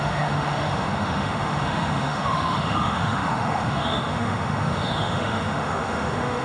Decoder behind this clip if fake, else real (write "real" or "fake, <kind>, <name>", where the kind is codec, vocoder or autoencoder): fake, autoencoder, DAC-VAE